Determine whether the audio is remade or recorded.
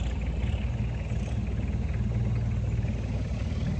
recorded